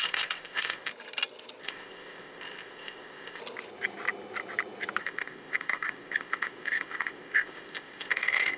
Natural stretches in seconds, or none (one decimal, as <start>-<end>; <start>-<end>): 0.9-1.6; 3.4-5.0